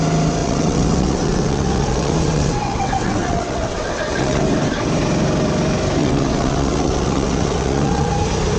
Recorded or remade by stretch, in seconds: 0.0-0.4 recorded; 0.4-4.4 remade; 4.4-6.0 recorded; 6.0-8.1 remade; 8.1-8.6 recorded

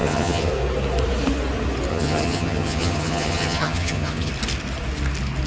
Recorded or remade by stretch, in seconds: 0.0-0.5 remade; 0.5-1.9 recorded; 1.9-4.3 remade; 4.3-5.5 recorded

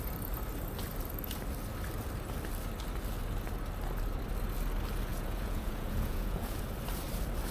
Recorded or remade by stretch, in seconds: 0.0-5.1 recorded; 5.1-6.6 remade; 6.6-7.5 recorded